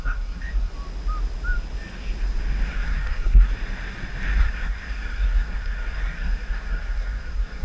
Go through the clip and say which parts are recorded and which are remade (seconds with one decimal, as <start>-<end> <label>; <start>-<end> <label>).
0.0-0.7 remade; 0.7-2.7 recorded; 2.7-3.5 remade; 3.5-4.4 recorded; 4.4-7.6 remade